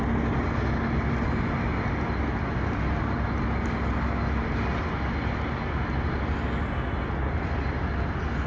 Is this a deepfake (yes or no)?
no